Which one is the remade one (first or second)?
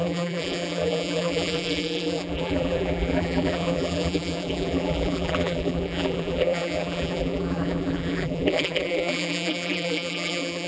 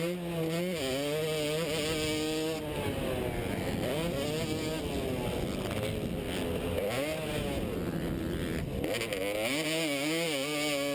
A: first